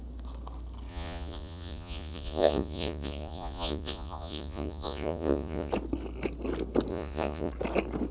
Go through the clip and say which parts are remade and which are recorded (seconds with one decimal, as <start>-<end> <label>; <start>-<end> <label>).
0.0-0.9 recorded; 0.9-5.7 remade; 5.7-6.9 recorded; 6.9-7.5 remade; 7.5-8.1 recorded